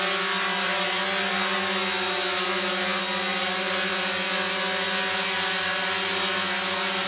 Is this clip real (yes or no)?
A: yes